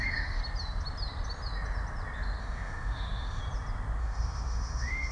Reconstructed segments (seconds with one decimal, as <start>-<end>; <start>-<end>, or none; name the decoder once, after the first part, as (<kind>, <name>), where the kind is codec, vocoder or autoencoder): 0.0-0.4 (autoencoder, DAC-VAE); 2.4-3.4; 4.0-5.1